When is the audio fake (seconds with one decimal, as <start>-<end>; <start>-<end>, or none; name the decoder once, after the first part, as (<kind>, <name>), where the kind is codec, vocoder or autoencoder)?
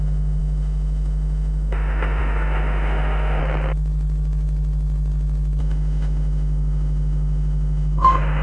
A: 0.0-3.4 (autoencoder, DAC-VAE); 5.6-8.4